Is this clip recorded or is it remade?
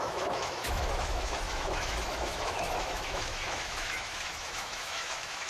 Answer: remade